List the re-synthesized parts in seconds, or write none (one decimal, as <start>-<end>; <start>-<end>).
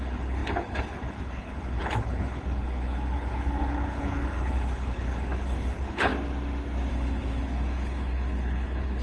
0.0-6.1; 6.9-9.0